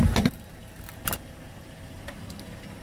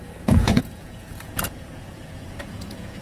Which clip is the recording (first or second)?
first